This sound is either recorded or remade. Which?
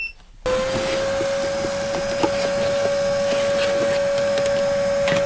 recorded